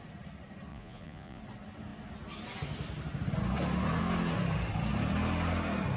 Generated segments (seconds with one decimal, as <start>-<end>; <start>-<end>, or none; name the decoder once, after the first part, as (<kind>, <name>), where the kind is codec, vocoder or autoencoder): 0.7-1.4 (vocoder, Vocos)